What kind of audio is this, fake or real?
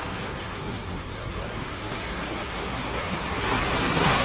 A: fake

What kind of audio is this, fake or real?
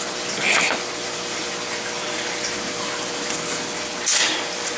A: real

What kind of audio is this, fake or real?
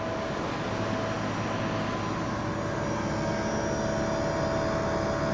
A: real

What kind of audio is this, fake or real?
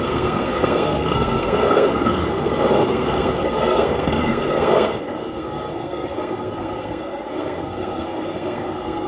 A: fake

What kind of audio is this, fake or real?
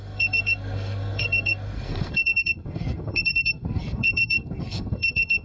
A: fake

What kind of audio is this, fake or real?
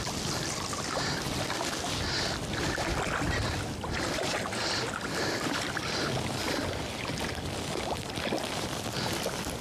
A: real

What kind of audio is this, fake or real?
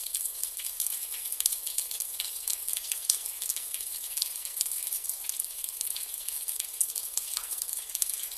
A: fake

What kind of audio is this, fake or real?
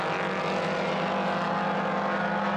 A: real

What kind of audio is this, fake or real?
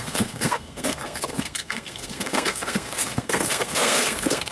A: fake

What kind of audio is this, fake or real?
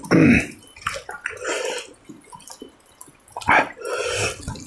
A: real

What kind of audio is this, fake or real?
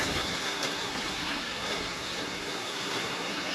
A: fake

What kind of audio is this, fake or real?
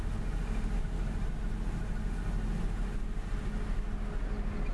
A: real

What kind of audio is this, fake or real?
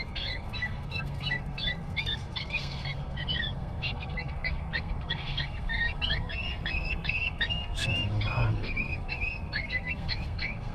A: fake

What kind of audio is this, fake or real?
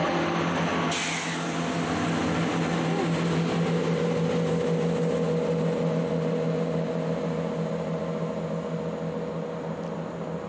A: real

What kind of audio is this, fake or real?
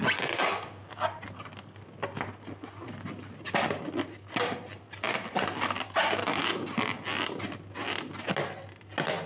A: real